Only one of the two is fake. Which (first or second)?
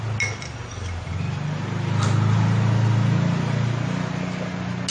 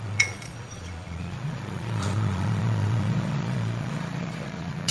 second